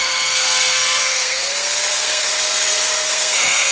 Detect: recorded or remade remade